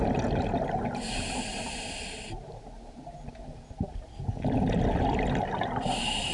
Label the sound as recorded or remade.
recorded